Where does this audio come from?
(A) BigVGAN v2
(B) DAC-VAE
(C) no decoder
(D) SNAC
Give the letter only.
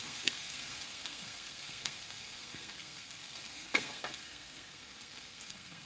D